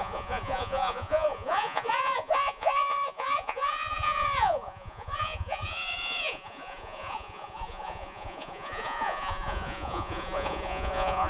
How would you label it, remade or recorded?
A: remade